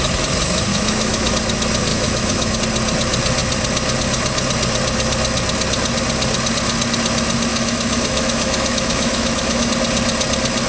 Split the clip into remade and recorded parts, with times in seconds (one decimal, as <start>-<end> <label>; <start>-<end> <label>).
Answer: 0.0-0.7 recorded; 0.7-1.3 remade; 1.3-1.9 recorded; 1.9-2.6 remade; 2.6-7.5 recorded; 7.5-9.7 remade; 9.7-10.7 recorded